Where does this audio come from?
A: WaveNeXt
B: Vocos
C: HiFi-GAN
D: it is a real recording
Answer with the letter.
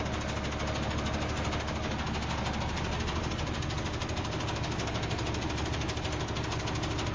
D